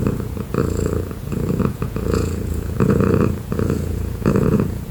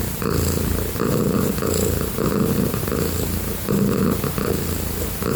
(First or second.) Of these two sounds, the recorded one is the second